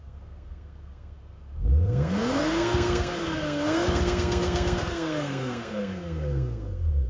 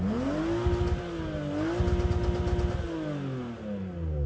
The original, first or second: second